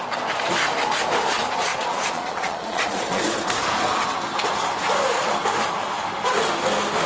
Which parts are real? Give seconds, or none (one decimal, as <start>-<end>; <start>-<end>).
0.0-1.7; 3.2-7.1